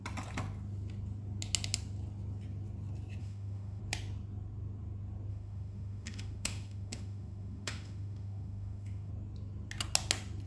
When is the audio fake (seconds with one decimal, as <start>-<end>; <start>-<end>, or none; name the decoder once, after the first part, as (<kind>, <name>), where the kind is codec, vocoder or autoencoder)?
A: 3.2-3.8 (autoencoder, DAC-VAE); 5.3-9.1